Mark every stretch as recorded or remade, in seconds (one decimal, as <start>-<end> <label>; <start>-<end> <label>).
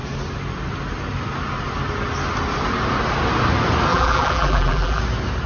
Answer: 0.0-3.9 recorded; 3.9-5.0 remade; 5.0-5.5 recorded